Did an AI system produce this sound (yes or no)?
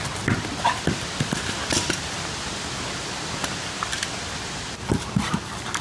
no